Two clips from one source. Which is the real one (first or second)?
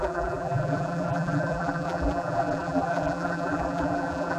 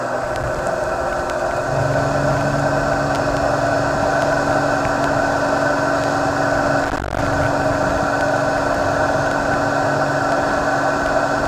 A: second